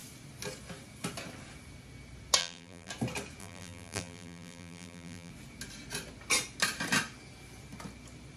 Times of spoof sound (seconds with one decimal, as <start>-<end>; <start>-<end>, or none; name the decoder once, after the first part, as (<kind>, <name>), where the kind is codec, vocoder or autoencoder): 2.4-2.9 (vocoder, BigVGAN v2); 3.4-5.3